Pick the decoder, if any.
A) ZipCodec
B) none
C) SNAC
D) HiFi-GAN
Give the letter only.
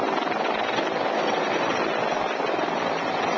B